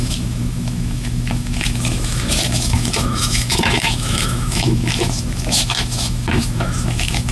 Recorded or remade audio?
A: remade